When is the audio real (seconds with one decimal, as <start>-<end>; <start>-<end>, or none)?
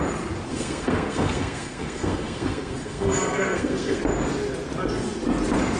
0.0-0.5; 4.0-5.8